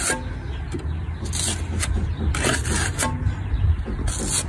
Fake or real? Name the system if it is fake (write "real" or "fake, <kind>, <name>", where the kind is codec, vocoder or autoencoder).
real